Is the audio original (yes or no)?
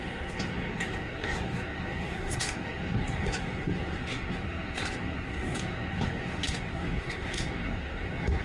no